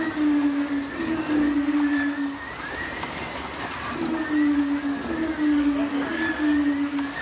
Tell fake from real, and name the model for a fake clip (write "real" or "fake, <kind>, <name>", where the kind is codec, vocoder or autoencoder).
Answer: real